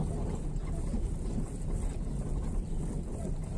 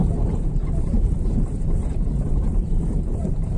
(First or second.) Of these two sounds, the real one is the first